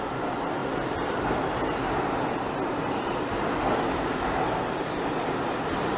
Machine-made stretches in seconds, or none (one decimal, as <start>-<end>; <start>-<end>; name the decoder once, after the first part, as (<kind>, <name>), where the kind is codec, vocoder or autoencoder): 0.6-1.3 (vocoder, BigVGAN v2); 2.8-3.6